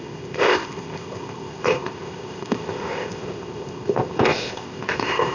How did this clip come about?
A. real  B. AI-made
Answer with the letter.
B